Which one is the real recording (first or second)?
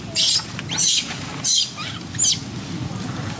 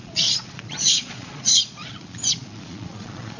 first